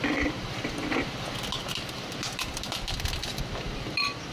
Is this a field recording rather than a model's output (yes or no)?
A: yes